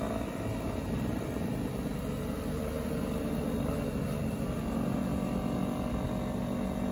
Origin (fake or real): real